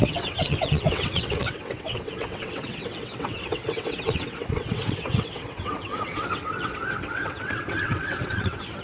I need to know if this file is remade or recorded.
remade